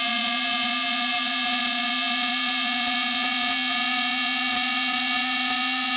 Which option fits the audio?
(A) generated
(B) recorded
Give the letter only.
A